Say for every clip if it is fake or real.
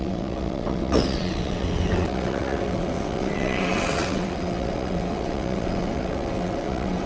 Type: fake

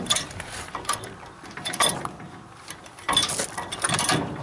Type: fake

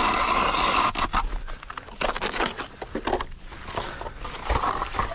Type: real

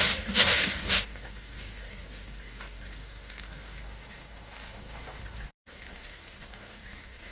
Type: fake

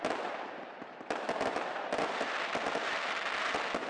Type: real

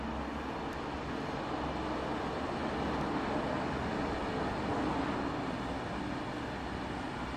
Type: real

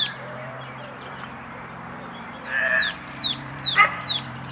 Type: fake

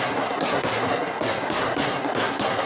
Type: fake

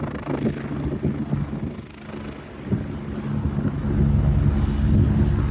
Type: real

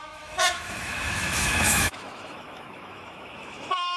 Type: fake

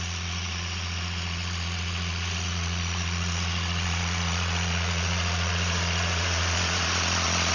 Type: fake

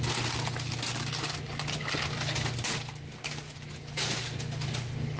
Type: real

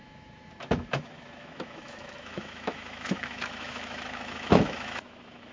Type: fake